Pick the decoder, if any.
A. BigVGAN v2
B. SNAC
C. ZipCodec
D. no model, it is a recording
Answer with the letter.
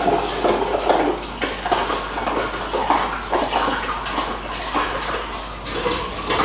D